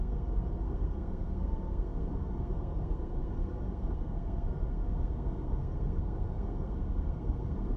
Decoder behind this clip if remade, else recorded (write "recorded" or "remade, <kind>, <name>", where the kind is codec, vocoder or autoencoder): remade, codec, SNAC